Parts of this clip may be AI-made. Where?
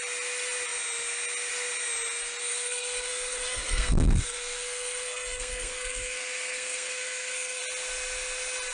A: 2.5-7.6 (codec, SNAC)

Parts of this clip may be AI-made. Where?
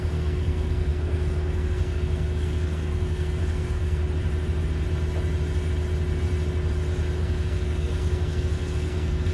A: 0.0-4.0 (codec, SNAC); 7.2-9.3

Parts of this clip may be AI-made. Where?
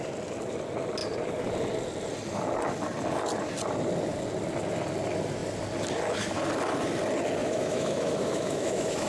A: 7.4-9.1 (autoencoder, DAC-VAE)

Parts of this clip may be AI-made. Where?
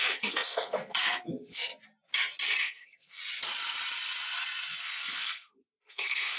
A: 0.0-1.7 (codec, SNAC); 2.6-3.2; 4.8-6.4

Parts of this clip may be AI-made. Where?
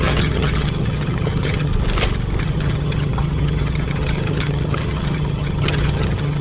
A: 0.0-1.7 (vocoder, HiFi-GAN); 2.4-6.4